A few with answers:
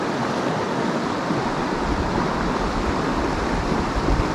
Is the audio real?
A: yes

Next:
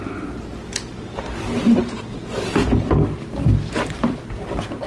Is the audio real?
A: yes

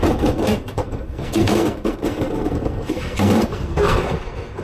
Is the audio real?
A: no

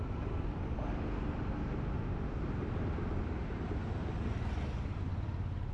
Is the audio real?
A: yes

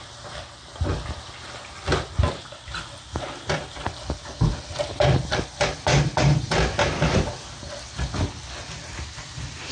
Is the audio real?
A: yes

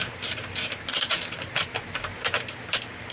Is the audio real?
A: no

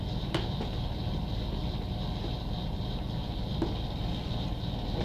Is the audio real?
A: yes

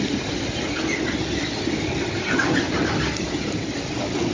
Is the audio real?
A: yes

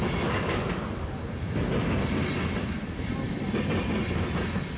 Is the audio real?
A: yes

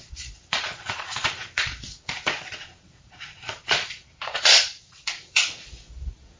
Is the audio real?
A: no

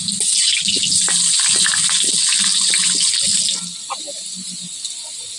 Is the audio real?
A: yes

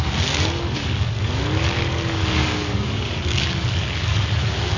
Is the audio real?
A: no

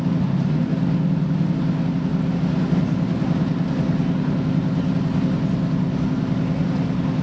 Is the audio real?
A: yes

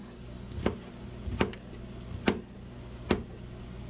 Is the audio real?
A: yes